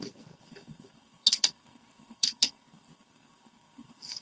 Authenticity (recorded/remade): remade